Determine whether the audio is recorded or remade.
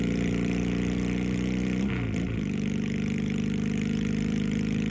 recorded